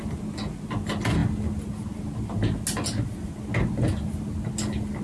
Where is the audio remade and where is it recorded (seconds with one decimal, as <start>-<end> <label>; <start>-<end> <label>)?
0.0-5.0 recorded